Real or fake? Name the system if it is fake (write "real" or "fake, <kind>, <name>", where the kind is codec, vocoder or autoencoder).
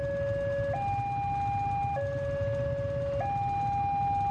real